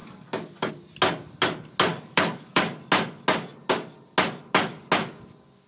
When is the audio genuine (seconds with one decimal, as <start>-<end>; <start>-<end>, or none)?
0.7-1.9; 2.6-5.7